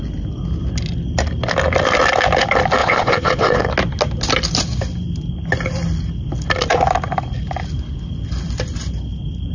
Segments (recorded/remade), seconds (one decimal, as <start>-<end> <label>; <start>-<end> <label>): 0.0-2.8 recorded; 2.8-3.7 remade; 3.7-9.5 recorded